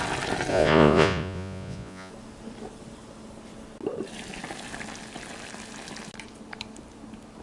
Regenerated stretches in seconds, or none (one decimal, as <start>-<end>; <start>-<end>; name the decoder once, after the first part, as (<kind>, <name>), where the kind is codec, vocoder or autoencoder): 0.5-2.1 (vocoder, Vocos)